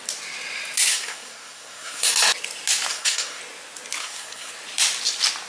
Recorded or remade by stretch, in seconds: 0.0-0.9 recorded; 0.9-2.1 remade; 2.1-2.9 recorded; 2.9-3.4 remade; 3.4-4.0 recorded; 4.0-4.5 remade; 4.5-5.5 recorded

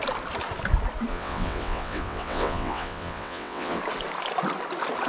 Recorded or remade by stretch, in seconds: 0.0-1.1 recorded; 1.1-3.8 remade; 3.8-5.1 recorded